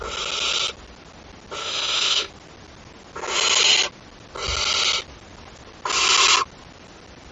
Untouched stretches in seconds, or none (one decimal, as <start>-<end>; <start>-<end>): 0.0-1.6; 2.3-7.3